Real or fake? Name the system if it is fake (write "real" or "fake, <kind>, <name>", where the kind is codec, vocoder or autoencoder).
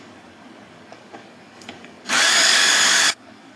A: fake, codec, DAC